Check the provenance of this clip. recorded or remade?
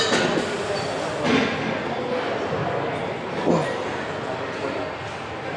recorded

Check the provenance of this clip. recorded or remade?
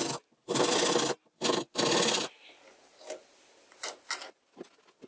recorded